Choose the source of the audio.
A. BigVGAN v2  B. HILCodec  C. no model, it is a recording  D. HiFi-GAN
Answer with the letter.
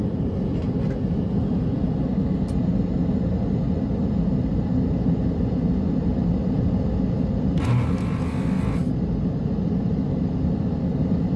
C